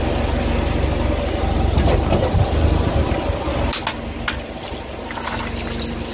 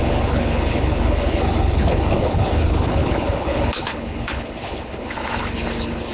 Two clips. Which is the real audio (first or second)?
first